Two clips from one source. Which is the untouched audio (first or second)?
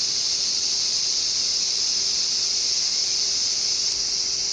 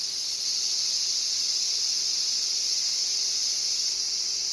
second